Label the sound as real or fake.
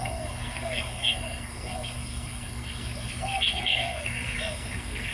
fake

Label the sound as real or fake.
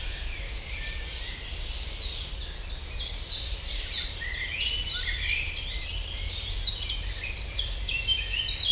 fake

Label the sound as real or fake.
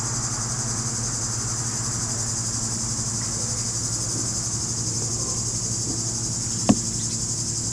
real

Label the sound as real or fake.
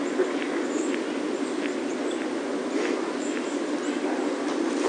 real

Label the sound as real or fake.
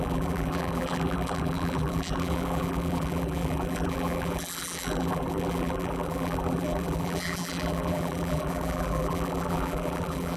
fake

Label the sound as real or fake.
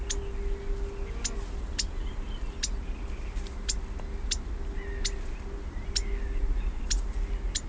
real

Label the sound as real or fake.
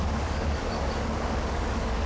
fake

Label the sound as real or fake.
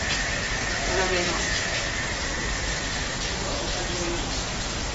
real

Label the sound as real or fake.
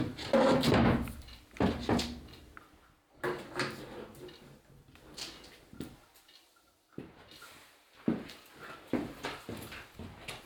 real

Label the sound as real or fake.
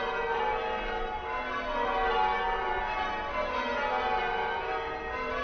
real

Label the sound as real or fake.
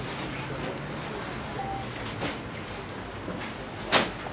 real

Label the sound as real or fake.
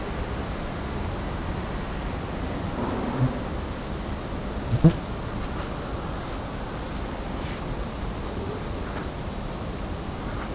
real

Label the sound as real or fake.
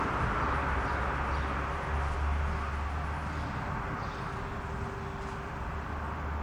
real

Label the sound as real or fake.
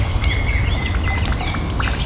real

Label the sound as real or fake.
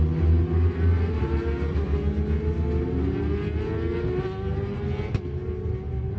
real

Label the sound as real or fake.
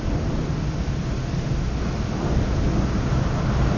real